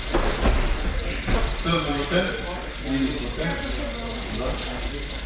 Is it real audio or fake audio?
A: real